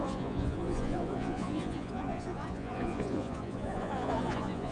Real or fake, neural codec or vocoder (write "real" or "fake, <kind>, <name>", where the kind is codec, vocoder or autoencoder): fake, vocoder, Vocos